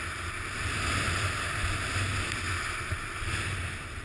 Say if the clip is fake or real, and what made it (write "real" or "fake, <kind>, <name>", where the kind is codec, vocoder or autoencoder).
real